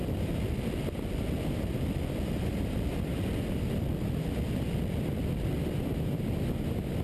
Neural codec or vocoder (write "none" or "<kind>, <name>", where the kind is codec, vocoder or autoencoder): none